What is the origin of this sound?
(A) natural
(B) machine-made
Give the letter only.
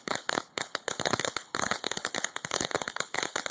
B